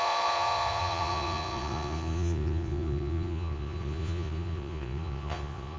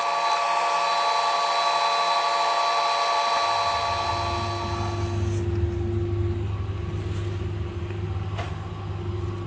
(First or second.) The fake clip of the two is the first